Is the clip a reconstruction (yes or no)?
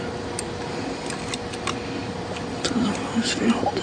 no